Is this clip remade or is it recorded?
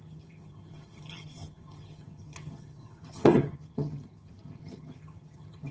remade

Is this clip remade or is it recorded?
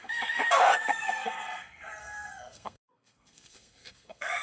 remade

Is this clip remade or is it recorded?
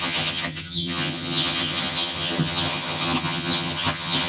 remade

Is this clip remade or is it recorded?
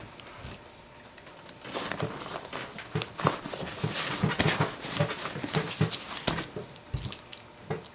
recorded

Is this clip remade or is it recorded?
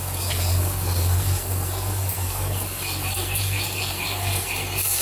remade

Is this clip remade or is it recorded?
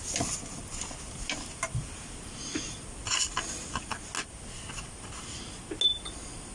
recorded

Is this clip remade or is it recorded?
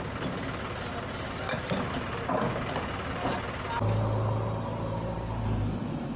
recorded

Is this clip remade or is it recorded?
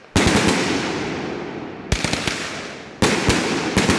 recorded